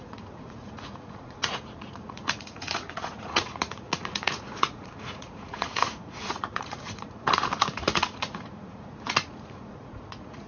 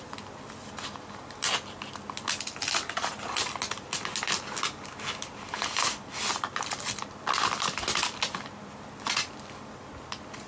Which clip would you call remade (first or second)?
first